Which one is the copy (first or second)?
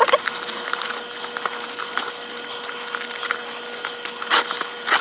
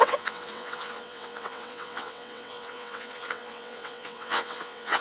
second